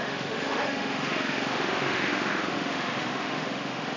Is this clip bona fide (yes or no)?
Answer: no